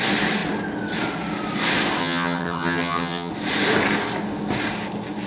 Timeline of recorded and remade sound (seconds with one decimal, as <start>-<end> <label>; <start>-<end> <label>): 0.0-2.0 recorded; 2.0-3.3 remade; 3.3-5.3 recorded